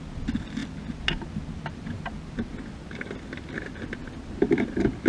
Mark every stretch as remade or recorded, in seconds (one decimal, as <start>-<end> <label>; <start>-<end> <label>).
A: 0.0-5.1 recorded